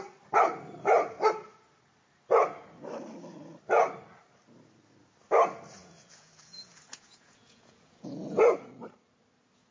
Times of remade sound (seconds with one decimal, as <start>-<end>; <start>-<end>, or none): 5.8-8.7